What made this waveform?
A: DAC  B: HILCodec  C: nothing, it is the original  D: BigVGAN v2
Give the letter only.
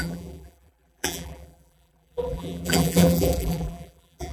D